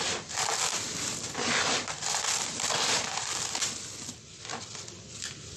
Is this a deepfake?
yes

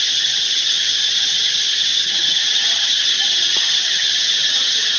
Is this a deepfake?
yes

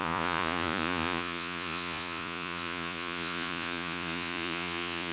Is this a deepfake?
yes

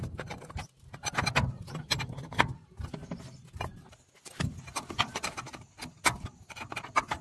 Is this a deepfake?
no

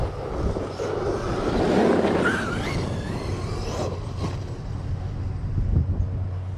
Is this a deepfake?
no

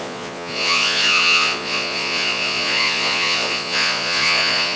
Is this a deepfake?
yes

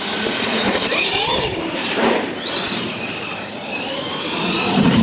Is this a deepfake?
yes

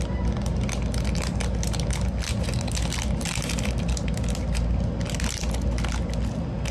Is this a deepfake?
no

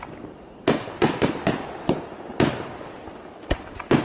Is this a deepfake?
no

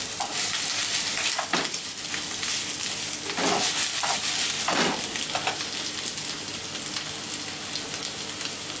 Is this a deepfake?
no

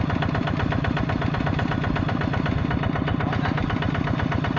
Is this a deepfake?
no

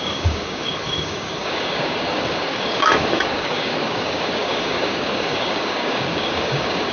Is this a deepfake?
yes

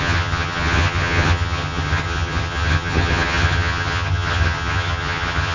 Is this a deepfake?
yes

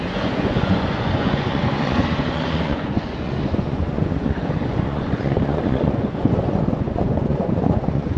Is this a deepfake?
yes